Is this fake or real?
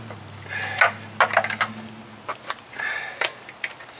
real